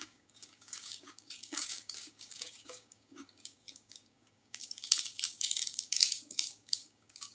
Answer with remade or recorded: remade